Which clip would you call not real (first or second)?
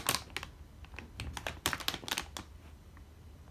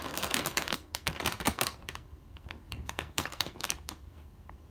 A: second